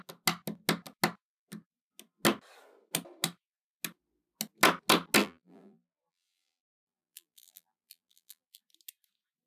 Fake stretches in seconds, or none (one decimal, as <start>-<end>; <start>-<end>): 5.2-8.6